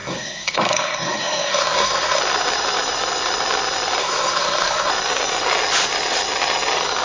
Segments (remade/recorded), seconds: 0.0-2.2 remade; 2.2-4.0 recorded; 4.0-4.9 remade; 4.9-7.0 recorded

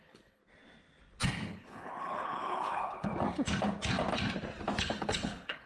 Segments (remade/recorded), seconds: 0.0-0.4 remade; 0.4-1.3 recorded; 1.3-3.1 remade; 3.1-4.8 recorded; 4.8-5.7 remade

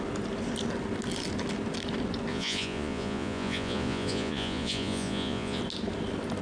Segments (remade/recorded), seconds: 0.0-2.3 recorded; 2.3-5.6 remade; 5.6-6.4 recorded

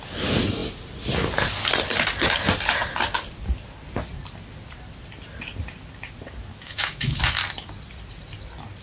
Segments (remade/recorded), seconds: 0.0-6.5 recorded; 6.5-7.2 remade; 7.2-8.8 recorded

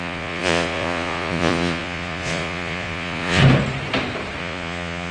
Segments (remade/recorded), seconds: 0.0-3.4 remade; 3.4-4.4 recorded; 4.4-5.1 remade

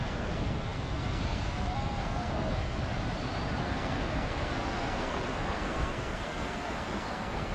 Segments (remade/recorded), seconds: 0.0-2.8 remade; 2.8-3.6 recorded; 3.6-7.5 remade

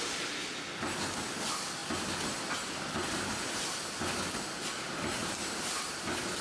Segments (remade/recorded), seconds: 0.0-6.4 recorded

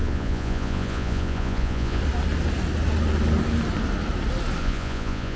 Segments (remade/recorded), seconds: 0.0-2.0 remade; 2.0-4.6 recorded; 4.6-5.4 remade